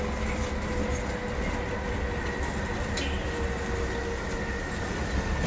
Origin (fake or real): real